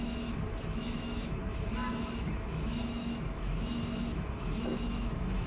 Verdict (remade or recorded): remade